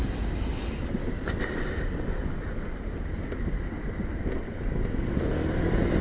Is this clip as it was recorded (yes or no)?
yes